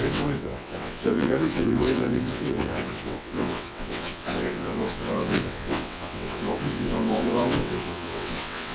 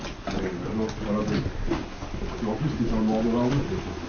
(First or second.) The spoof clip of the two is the first